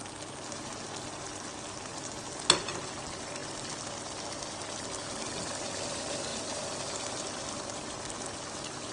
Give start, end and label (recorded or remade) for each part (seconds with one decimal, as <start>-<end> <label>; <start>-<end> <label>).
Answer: 0.0-8.9 recorded